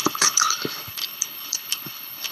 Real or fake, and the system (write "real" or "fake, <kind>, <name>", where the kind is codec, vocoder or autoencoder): fake, codec, HILCodec